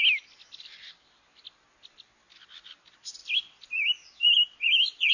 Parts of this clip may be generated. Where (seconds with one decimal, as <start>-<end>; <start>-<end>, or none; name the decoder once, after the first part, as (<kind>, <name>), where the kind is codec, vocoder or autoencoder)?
0.0-2.3 (vocoder, BigVGAN v2); 3.2-5.1